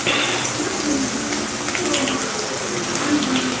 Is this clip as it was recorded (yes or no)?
yes